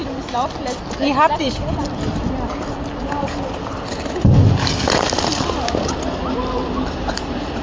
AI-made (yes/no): no